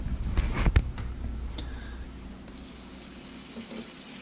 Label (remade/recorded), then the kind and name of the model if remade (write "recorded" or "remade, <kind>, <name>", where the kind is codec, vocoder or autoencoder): recorded